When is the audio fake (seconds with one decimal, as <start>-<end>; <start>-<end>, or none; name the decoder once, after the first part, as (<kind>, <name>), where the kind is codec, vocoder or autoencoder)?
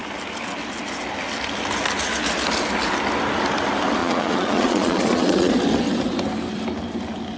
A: 4.0-5.5 (vocoder, Vocos)